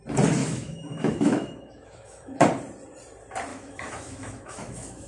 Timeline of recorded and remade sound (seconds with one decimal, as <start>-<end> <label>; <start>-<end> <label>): 0.0-0.4 recorded; 0.4-2.4 remade; 2.4-3.5 recorded; 3.5-5.1 remade

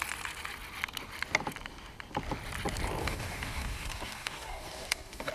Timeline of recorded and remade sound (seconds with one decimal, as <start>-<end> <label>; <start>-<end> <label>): 0.0-3.0 recorded; 3.0-5.3 remade